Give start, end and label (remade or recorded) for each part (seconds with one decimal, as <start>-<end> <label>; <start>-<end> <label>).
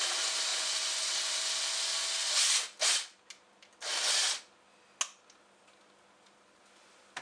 0.0-0.5 recorded; 0.5-1.1 remade; 1.1-7.2 recorded